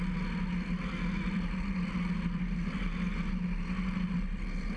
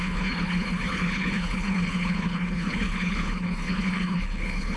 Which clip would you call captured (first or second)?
first